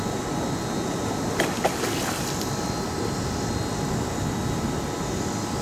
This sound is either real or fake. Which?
real